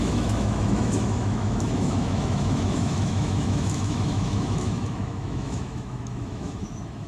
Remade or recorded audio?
remade